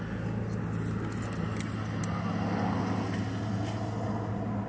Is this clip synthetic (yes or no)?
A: no